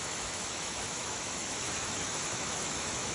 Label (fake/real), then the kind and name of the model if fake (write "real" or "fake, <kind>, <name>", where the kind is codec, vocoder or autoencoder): fake, autoencoder, DAC-VAE